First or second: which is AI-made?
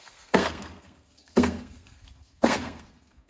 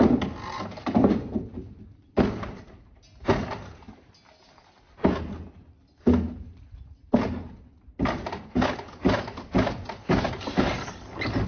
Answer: first